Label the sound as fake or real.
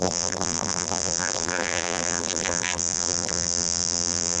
fake